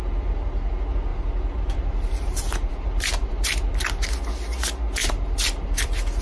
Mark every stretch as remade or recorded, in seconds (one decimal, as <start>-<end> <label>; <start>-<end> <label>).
0.0-1.1 recorded; 1.1-3.7 remade; 3.7-5.0 recorded; 5.0-6.2 remade